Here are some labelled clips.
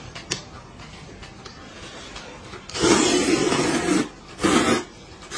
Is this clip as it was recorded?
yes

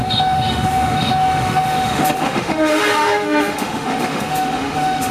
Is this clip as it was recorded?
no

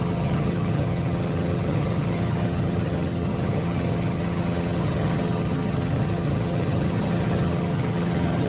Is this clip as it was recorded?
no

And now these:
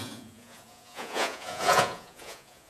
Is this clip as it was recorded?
no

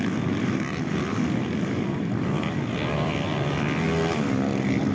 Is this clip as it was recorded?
yes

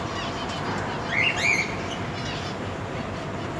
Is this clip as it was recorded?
yes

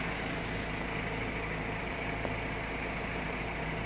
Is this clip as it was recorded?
yes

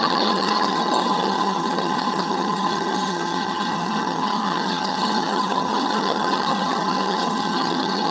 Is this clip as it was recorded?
no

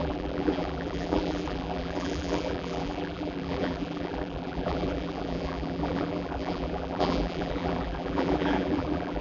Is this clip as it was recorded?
no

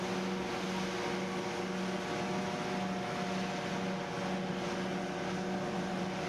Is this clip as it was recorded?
yes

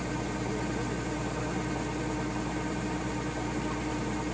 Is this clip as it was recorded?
yes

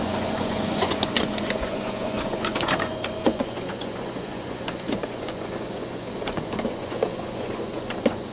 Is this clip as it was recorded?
no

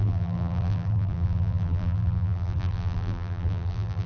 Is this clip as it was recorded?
no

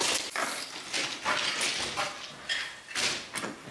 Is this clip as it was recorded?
yes